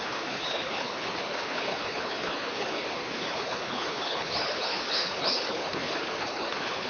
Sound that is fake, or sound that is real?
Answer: fake